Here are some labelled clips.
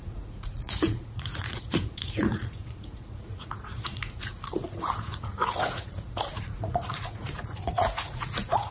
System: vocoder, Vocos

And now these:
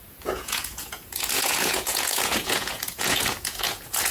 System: vocoder, Vocos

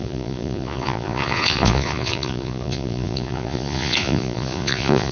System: vocoder, Vocos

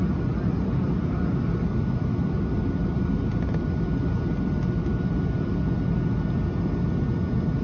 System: none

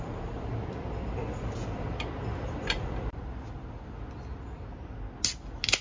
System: none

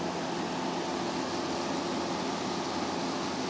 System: none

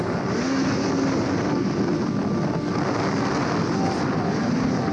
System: none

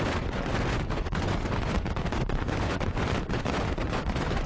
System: vocoder, Vocos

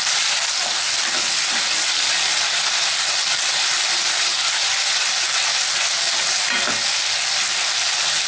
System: none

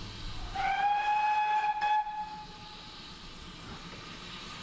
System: none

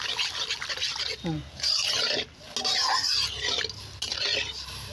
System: none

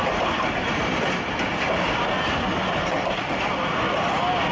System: none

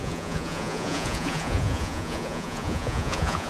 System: vocoder, Vocos